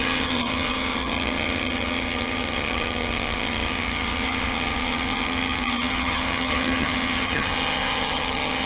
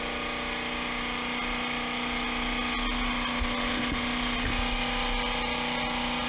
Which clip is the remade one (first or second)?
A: first